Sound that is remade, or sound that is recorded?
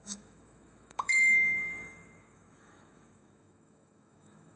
remade